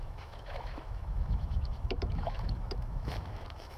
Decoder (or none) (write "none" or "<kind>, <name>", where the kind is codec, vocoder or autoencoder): autoencoder, DAC-VAE